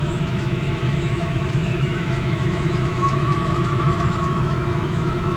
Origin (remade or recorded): remade